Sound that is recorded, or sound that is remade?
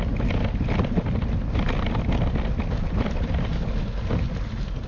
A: recorded